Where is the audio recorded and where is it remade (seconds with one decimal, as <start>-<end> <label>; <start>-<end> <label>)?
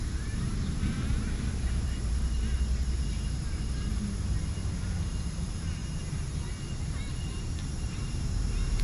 0.0-5.8 remade; 5.8-6.8 recorded; 6.8-8.8 remade